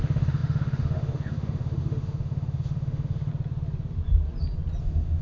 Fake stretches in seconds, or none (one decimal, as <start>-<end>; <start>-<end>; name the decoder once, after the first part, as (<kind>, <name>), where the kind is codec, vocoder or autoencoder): 0.0-3.3 (autoencoder, DAC-VAE); 4.8-5.2